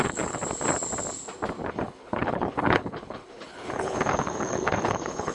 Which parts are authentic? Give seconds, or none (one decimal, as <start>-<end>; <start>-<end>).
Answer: 0.4-1.7

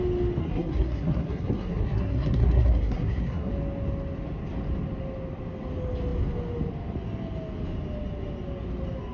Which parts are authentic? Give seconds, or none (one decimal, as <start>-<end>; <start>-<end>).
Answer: 0.0-0.4; 3.5-9.1

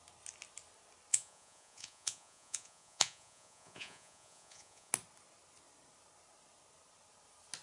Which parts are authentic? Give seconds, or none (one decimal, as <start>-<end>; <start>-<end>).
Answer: 0.0-1.1; 4.9-7.6

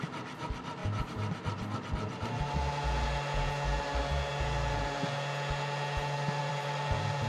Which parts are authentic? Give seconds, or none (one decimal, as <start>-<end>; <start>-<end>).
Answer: 0.0-6.4

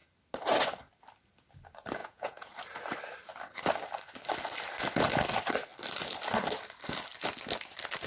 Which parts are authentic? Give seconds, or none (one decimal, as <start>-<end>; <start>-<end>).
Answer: 0.0-2.0; 2.5-8.1